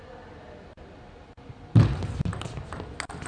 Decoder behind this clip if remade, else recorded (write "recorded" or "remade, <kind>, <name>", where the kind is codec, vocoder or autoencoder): recorded